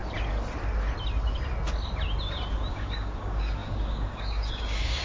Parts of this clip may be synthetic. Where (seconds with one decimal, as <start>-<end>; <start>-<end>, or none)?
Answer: 2.7-5.0